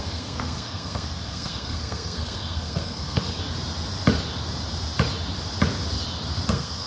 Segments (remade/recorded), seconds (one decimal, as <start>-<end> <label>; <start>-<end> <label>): 0.0-3.4 remade; 3.4-6.5 recorded; 6.5-6.9 remade

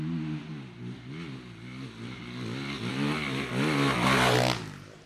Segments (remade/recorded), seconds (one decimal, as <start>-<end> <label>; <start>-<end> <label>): 0.0-5.1 recorded

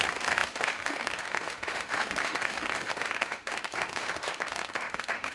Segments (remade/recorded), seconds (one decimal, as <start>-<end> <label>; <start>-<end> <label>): 0.0-5.3 remade

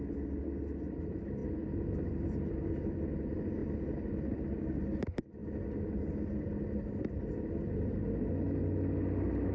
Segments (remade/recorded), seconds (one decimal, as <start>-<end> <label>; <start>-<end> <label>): 0.0-9.5 recorded

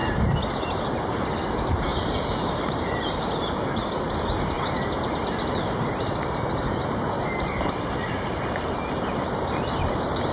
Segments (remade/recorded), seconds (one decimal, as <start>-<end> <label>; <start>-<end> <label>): 0.0-0.5 recorded; 0.5-3.8 remade; 3.8-4.3 recorded; 4.3-10.3 remade

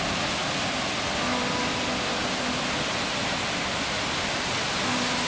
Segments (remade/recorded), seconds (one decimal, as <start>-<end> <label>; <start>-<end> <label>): 0.0-5.3 recorded

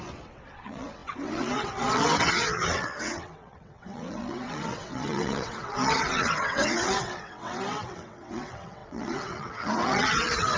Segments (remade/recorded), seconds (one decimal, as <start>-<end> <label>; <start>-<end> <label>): 0.0-10.6 remade